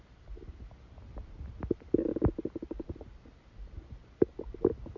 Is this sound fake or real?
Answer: real